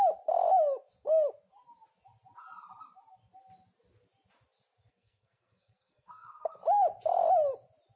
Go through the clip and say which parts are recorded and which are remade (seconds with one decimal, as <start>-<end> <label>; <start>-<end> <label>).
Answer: 0.0-4.9 recorded; 4.9-6.6 remade; 6.6-8.0 recorded